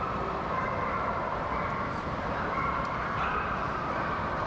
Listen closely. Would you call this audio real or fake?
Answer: fake